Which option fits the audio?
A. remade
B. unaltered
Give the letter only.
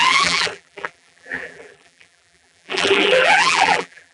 A